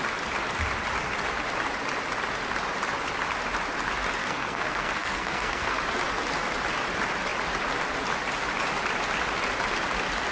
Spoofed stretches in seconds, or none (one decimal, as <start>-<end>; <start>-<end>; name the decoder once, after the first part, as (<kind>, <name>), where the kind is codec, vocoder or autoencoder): 4.2-5.8 (codec, SNAC)